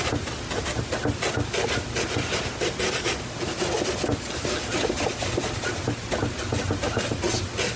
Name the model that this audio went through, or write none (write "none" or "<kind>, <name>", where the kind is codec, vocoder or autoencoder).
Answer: none